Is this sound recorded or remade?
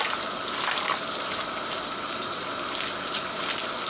recorded